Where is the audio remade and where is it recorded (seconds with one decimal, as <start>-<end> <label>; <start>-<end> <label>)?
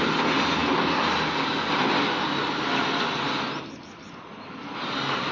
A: 0.0-5.3 recorded